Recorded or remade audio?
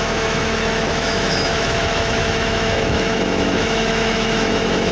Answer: remade